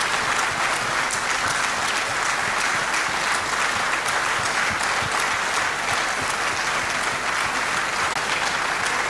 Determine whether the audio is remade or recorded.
recorded